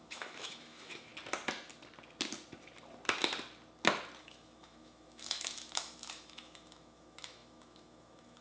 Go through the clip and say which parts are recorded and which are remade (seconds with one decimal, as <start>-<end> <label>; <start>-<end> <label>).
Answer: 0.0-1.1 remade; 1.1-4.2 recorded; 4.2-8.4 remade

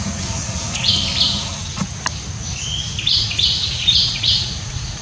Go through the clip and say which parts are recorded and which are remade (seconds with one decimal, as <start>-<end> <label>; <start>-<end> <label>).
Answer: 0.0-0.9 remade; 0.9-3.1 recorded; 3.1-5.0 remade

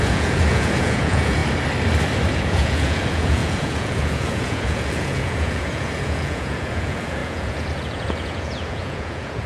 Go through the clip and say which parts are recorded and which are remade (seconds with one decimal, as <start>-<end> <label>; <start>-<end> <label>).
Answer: 0.0-1.4 remade; 1.4-2.3 recorded; 2.3-9.5 remade

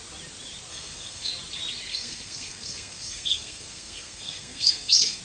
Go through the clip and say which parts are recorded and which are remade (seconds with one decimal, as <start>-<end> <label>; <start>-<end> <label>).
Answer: 0.0-0.7 recorded; 0.7-1.3 remade; 1.3-1.9 recorded; 1.9-5.2 remade